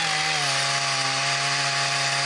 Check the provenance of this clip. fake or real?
real